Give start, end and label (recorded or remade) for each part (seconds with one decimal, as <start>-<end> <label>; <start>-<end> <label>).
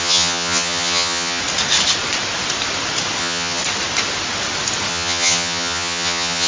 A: 0.0-1.4 remade; 1.4-3.2 recorded; 3.2-3.6 remade; 3.6-4.9 recorded; 4.9-6.5 remade